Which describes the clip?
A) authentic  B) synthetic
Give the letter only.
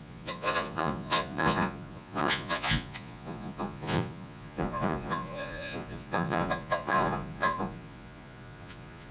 B